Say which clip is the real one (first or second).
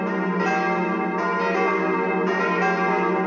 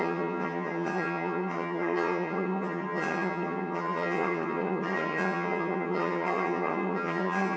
first